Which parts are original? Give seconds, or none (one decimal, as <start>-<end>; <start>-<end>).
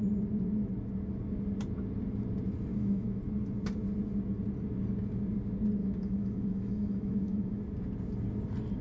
0.0-2.7; 3.2-5.8; 7.6-8.8